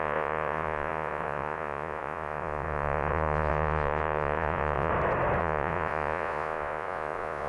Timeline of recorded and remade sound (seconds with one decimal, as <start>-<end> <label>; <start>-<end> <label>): 0.0-4.9 remade; 4.9-5.4 recorded; 5.4-7.5 remade